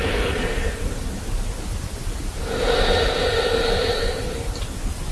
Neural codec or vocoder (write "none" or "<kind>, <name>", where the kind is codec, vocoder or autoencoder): none